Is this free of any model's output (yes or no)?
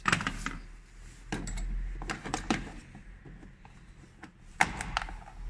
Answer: yes